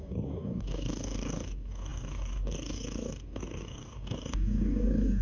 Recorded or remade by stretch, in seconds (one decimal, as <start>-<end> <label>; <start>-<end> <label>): 0.0-5.2 remade